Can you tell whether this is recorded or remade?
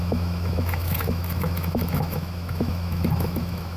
remade